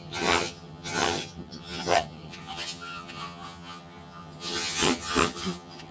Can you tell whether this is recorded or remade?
remade